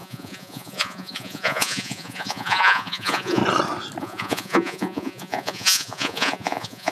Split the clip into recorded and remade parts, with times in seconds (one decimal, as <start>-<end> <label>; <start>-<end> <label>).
0.0-3.4 remade; 3.4-4.0 recorded; 4.0-6.9 remade